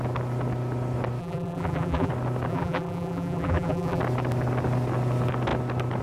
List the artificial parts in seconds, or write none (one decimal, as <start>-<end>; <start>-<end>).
1.2-2.1; 2.5-4.0